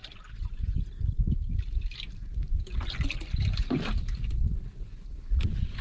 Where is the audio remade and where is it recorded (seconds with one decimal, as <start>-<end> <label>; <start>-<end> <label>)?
0.0-5.1 recorded; 5.1-5.8 remade